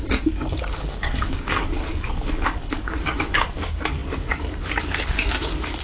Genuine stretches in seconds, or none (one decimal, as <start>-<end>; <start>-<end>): none